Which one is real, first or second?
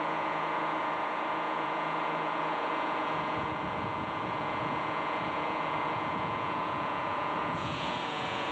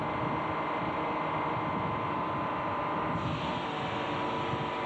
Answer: second